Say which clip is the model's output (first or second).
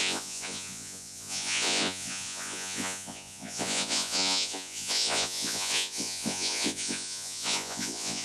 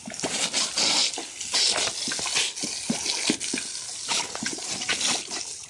first